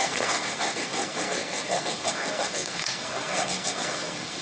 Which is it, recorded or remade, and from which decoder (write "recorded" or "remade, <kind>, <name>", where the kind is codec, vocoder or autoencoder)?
remade, codec, SNAC